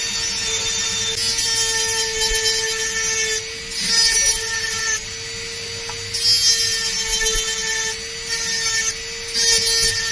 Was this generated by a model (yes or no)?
no